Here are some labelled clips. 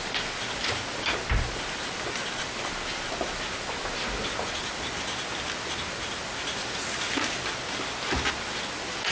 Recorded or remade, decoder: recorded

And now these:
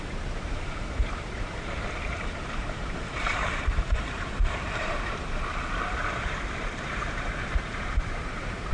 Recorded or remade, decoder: remade, vocoder, BigVGAN v2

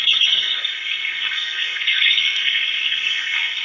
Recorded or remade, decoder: remade, codec, SNAC